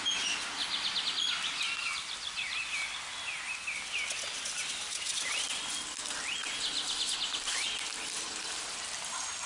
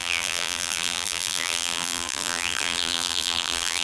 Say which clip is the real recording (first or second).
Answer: first